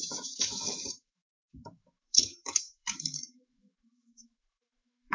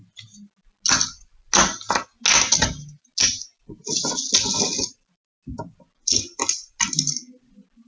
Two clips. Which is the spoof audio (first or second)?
first